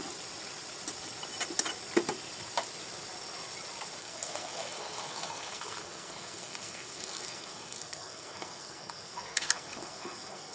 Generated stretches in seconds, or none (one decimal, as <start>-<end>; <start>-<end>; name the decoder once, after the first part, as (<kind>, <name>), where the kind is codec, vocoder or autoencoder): 4.0-10.5 (codec, SNAC)

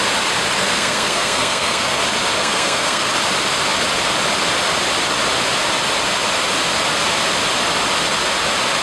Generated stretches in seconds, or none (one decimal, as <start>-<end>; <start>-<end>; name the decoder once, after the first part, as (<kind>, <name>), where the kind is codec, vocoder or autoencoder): 0.6-2.0 (codec, SNAC); 2.4-3.1